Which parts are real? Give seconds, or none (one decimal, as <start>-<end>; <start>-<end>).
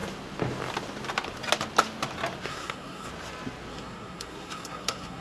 0.0-2.5; 3.1-3.7